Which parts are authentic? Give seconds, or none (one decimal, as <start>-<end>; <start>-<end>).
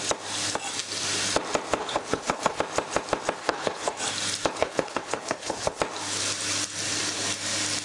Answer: 0.0-1.8; 2.6-3.4; 4.0-4.6; 5.8-7.8